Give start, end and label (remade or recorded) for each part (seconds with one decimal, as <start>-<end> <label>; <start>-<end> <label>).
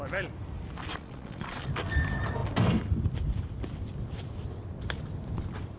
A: 0.0-0.9 recorded; 0.9-1.7 remade; 1.7-5.8 recorded